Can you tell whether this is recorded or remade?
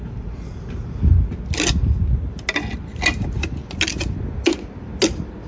recorded